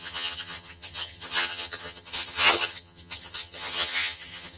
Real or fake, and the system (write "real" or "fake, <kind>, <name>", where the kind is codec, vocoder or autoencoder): fake, vocoder, HiFi-GAN